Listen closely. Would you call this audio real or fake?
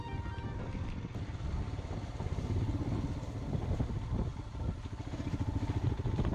real